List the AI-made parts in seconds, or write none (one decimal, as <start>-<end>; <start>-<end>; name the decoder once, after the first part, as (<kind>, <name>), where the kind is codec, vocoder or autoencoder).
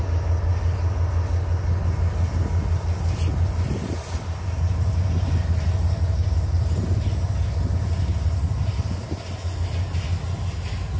3.3-7.1 (vocoder, BigVGAN v2)